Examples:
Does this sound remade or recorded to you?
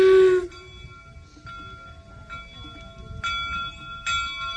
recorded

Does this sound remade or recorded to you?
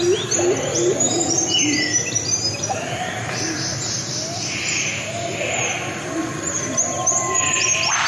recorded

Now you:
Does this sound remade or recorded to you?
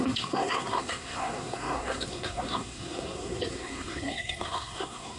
remade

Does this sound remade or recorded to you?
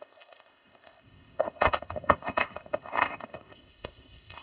remade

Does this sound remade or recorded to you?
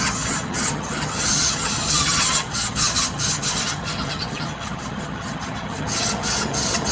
remade